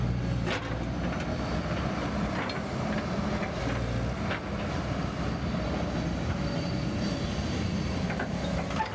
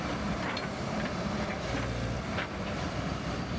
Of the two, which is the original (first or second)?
first